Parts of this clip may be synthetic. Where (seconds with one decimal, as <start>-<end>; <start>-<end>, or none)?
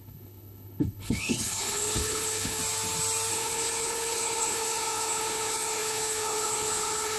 0.0-2.6; 3.3-7.2